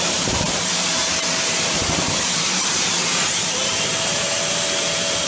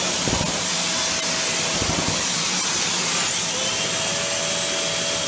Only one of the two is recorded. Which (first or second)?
second